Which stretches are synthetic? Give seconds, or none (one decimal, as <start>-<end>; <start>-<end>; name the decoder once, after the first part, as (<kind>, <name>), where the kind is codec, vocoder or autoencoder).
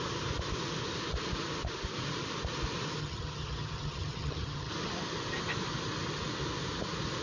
3.0-4.7 (vocoder, HiFi-GAN)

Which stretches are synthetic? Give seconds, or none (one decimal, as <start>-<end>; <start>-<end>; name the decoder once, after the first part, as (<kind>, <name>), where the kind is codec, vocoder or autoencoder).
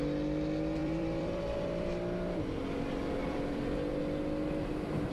0.8-1.9 (vocoder, BigVGAN v2); 3.2-4.0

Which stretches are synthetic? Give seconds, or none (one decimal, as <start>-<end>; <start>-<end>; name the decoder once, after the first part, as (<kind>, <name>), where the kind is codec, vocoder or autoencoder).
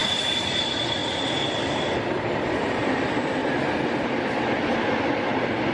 0.0-0.6 (vocoder, BigVGAN v2)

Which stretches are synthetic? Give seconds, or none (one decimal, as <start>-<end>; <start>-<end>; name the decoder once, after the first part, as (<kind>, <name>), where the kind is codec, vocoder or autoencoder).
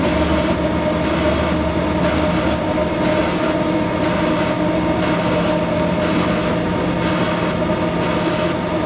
none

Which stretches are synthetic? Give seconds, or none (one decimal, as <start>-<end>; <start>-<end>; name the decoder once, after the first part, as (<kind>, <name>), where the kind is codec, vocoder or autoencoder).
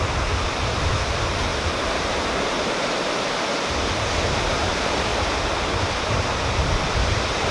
0.0-5.1 (vocoder, BigVGAN v2); 5.8-6.6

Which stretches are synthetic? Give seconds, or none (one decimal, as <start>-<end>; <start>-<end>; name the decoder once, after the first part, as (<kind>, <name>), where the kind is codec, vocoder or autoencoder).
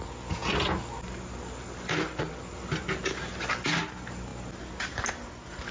none